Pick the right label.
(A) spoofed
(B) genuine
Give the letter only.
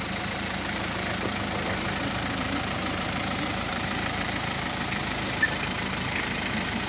A